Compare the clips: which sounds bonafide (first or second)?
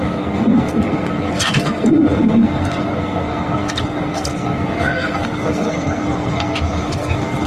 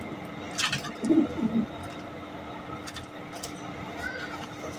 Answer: second